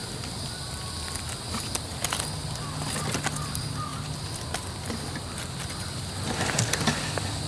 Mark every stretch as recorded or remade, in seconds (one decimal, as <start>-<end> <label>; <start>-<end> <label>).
0.0-7.5 recorded